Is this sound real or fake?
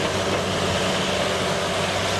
real